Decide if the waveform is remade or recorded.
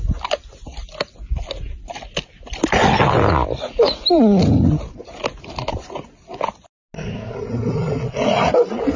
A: recorded